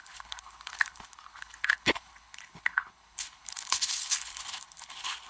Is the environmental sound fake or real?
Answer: fake